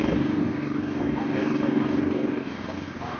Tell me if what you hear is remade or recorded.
remade